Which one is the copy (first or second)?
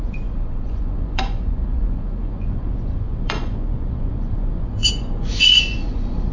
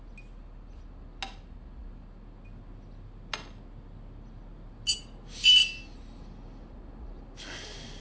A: first